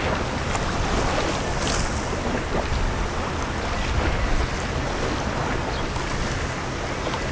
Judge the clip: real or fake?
real